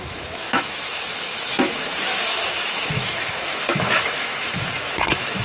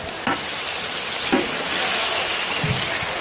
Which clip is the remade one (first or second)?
first